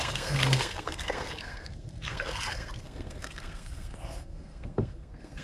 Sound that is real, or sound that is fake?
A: fake